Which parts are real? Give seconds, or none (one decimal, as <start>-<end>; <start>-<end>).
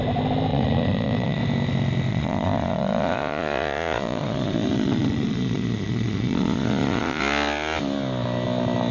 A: 0.0-0.5; 1.4-2.1; 7.2-8.9